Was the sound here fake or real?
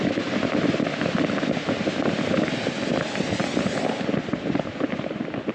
real